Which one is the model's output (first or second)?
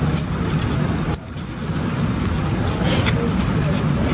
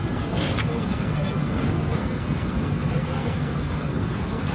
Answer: second